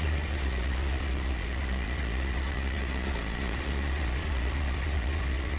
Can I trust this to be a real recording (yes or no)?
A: no